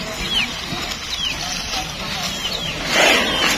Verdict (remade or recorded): recorded